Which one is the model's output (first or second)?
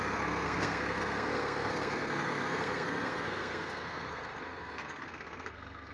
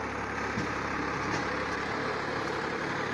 first